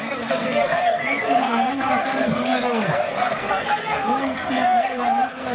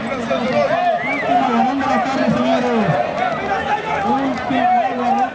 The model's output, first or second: first